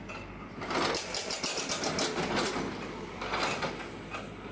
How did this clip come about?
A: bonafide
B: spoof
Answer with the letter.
A